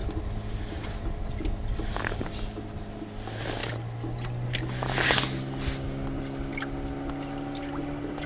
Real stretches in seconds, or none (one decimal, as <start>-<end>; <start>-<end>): 0.0-8.3